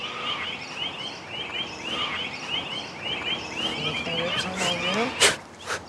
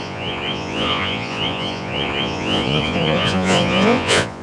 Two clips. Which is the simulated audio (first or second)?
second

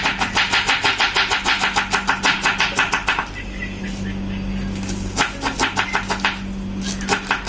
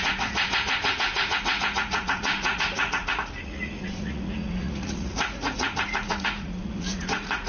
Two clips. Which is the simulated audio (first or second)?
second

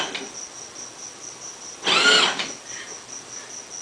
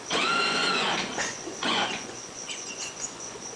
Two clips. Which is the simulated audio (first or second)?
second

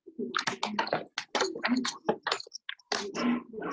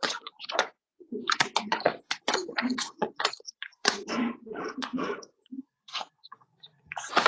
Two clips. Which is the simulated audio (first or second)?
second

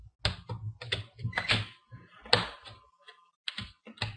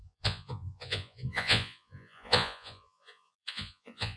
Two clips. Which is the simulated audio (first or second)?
second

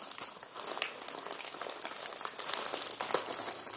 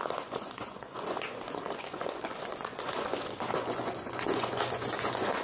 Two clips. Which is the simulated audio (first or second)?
second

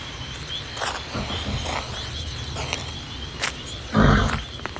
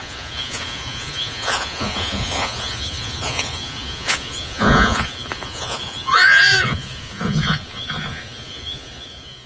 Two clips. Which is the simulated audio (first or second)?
second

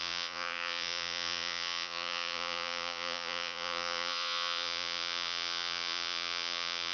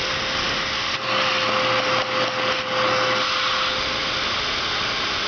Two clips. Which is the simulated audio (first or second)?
first